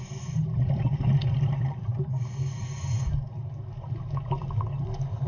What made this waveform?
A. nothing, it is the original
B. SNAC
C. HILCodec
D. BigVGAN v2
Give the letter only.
A